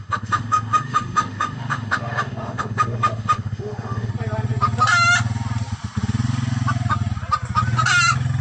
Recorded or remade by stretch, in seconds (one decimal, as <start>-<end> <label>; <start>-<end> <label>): 0.0-4.1 remade; 4.1-8.4 recorded